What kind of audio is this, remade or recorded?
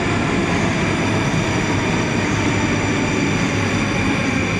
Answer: recorded